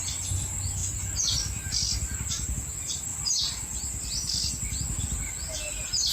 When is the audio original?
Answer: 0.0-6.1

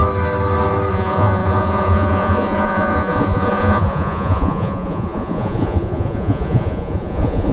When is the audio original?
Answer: 0.0-0.9

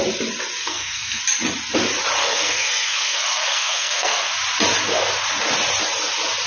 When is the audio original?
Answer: 0.0-0.6; 1.2-2.2; 4.3-6.5

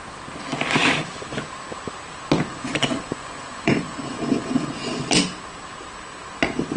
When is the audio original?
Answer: 0.0-2.5; 4.7-6.8

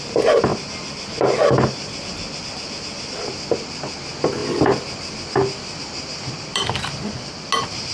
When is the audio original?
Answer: 0.0-4.4; 5.8-6.5; 7.3-7.9

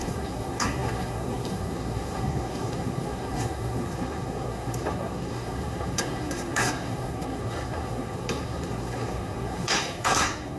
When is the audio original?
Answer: none